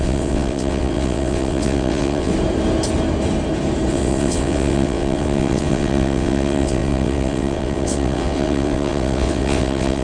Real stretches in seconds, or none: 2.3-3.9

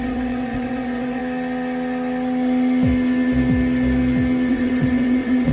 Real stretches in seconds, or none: 1.2-4.5